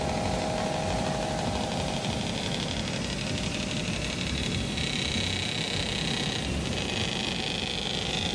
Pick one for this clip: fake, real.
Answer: real